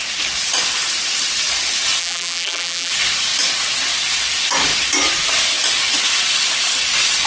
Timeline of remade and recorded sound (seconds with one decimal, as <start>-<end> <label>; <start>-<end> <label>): 0.0-2.0 recorded; 2.0-2.9 remade; 2.9-7.3 recorded